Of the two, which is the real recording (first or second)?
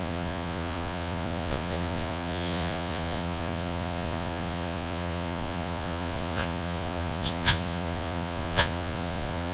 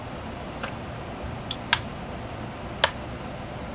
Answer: second